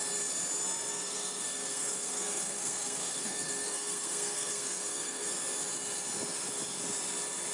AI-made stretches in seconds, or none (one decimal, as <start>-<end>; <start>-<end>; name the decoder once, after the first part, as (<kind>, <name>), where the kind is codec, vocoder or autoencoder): 0.9-5.3 (codec, SNAC)

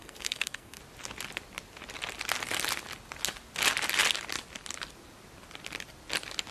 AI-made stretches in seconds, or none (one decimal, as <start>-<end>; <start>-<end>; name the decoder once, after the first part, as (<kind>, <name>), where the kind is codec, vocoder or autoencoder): 0.0-0.8 (codec, SNAC)

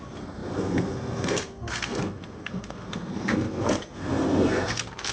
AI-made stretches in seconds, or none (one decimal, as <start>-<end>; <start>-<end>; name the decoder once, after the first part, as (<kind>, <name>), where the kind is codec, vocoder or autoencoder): 0.0-5.1 (codec, SNAC)

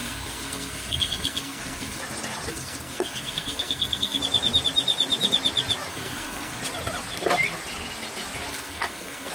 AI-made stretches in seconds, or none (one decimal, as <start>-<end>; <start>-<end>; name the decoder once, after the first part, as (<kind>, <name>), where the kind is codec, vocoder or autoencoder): 0.0-2.0 (codec, SNAC); 2.5-4.2; 5.9-6.6; 8.5-9.3

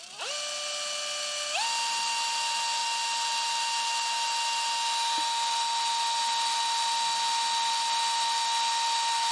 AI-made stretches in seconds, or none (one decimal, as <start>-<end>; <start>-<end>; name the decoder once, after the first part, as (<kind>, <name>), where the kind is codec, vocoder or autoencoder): none

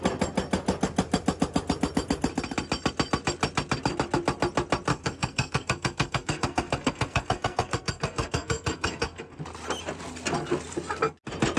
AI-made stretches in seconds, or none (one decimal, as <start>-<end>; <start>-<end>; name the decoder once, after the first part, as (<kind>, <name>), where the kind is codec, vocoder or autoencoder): 4.9-9.4 (codec, SNAC)

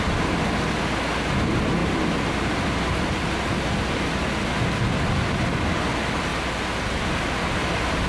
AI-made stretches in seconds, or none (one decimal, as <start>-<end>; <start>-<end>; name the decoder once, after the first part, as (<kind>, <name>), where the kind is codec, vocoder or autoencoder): none